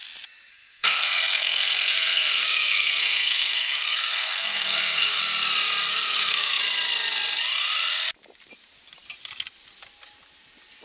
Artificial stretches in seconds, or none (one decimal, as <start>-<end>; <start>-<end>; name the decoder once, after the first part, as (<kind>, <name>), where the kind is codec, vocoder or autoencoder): 0.5-5.2 (codec, SNAC); 5.9-6.6